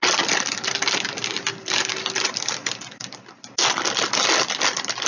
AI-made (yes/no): no